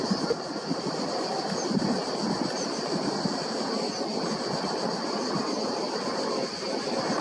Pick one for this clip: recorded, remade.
recorded